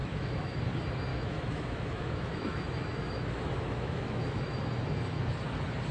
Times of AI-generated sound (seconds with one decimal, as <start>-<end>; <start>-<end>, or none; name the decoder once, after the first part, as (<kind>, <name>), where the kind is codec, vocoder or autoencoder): 0.0-0.6 (autoencoder, DAC-VAE); 1.1-4.6